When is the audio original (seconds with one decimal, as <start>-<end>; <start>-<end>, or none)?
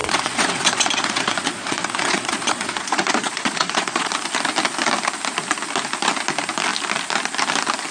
4.1-7.9